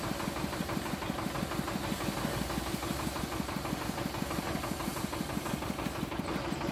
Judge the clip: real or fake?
real